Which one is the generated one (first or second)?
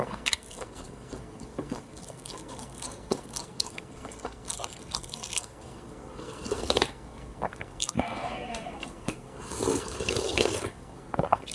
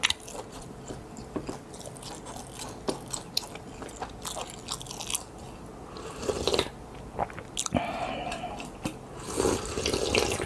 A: first